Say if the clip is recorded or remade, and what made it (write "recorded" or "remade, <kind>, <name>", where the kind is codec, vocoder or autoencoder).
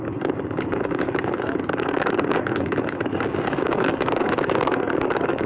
remade, codec, DAC